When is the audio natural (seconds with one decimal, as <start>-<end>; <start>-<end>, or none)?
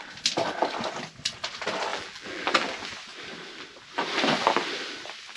0.0-1.9; 2.5-5.4